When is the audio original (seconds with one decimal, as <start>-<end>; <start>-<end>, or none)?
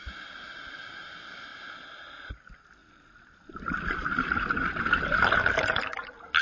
0.0-6.4